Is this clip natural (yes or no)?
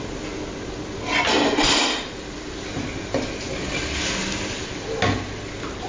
yes